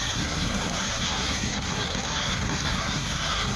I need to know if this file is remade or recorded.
remade